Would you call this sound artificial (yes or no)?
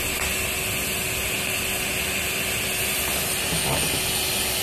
no